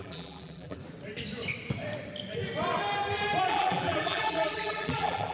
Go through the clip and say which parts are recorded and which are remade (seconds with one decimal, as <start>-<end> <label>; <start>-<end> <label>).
0.0-0.8 remade; 0.8-3.5 recorded; 3.5-5.3 remade